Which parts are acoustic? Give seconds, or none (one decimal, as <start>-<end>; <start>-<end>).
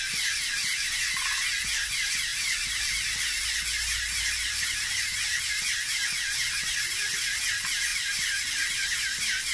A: 0.0-2.3; 3.4-7.9; 8.7-9.5